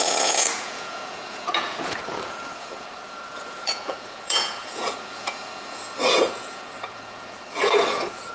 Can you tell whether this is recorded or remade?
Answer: remade